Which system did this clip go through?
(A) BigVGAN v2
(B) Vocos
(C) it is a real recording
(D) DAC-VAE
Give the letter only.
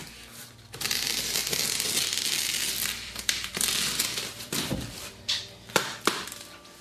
A